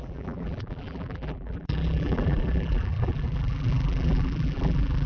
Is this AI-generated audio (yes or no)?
yes